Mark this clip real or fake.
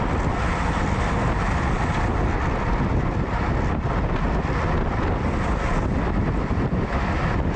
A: real